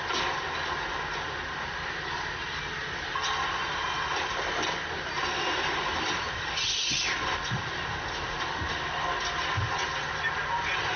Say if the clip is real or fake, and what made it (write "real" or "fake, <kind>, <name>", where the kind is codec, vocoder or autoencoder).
real